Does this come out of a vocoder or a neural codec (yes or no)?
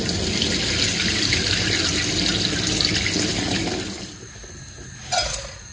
no